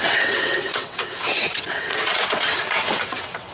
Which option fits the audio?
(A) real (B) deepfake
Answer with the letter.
B